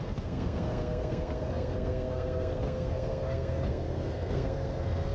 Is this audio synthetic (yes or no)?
yes